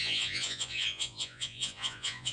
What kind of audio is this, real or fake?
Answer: fake